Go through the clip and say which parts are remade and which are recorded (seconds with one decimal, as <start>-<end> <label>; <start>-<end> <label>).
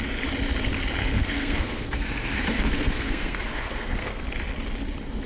0.0-1.0 recorded; 1.0-4.2 remade; 4.2-5.3 recorded